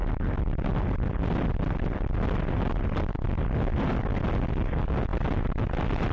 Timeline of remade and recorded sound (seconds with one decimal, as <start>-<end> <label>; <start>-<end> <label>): 0.0-6.1 recorded